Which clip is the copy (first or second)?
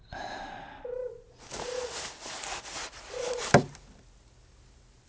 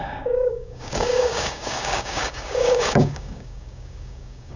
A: second